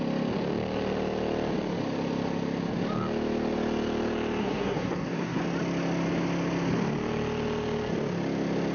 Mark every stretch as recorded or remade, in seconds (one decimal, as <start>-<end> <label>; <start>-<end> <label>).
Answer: 0.0-4.4 recorded; 4.4-5.4 remade; 5.4-8.7 recorded